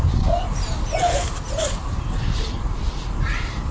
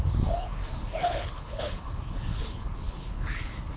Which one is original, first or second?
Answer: first